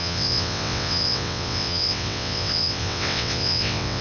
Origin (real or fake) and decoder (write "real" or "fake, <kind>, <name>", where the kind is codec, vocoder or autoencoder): fake, vocoder, WaveNeXt